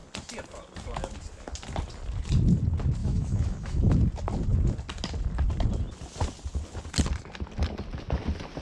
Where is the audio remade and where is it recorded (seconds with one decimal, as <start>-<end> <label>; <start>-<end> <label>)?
0.0-3.0 recorded; 3.0-3.8 remade; 3.8-8.6 recorded